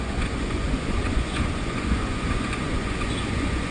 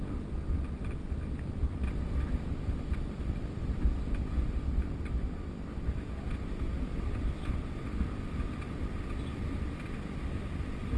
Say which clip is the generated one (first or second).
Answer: first